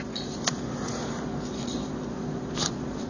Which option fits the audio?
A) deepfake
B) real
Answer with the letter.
A